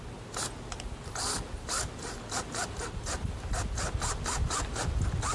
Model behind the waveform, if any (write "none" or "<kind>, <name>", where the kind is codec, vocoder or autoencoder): none